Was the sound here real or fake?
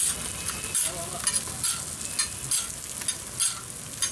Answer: real